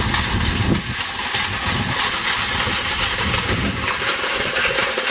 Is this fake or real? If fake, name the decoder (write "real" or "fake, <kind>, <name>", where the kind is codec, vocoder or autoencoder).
real